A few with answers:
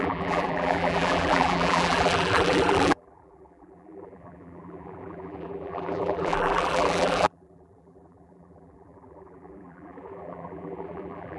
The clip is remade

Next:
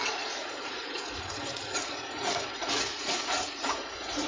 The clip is remade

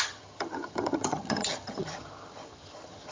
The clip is remade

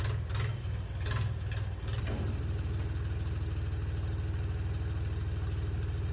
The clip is recorded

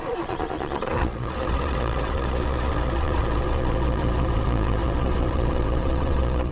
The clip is remade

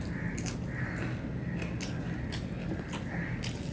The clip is recorded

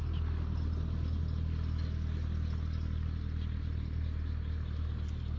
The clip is recorded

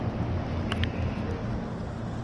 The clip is recorded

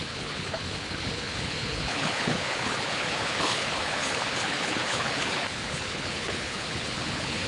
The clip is remade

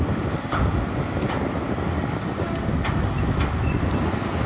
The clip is recorded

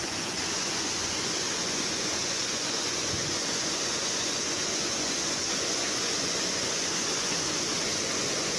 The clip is remade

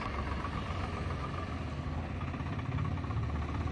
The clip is recorded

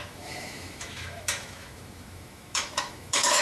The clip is remade